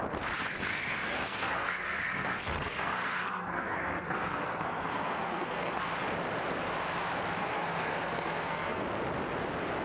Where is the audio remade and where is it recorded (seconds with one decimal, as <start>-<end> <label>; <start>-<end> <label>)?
0.0-0.7 recorded; 0.7-5.8 remade; 5.8-7.4 recorded; 7.4-8.8 remade; 8.8-9.8 recorded